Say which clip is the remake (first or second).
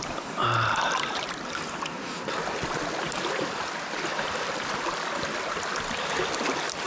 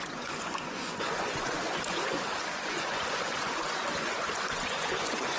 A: second